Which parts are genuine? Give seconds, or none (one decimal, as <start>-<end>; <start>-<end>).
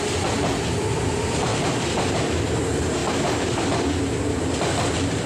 0.0-1.5; 2.3-5.3